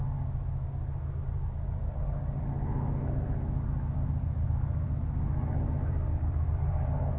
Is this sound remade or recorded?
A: recorded